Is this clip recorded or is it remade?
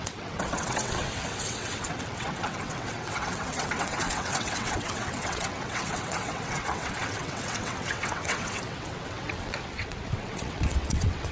remade